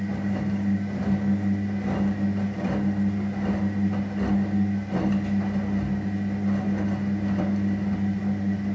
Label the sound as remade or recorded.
recorded